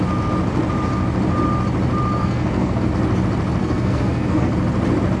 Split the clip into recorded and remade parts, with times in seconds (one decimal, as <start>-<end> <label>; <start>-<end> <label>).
0.0-2.2 recorded; 2.2-2.9 remade; 2.9-3.6 recorded; 3.6-4.5 remade; 4.5-5.2 recorded